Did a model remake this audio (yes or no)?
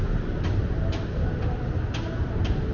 no